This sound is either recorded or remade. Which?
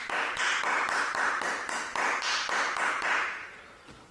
remade